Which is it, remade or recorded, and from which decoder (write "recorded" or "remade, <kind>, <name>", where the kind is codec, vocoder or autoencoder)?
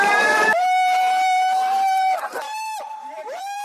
remade, vocoder, BigVGAN v2